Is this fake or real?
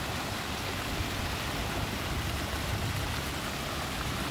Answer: real